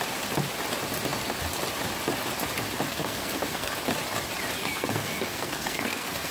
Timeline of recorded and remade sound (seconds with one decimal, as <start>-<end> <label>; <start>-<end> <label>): 0.0-2.9 recorded; 2.9-3.7 remade; 3.7-4.6 recorded; 4.6-6.3 remade